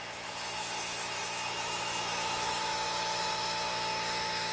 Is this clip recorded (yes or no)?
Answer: no